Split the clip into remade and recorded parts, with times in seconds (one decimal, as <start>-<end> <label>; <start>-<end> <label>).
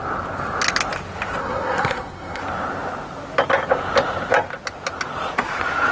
0.0-1.4 recorded; 1.4-2.4 remade; 2.4-5.9 recorded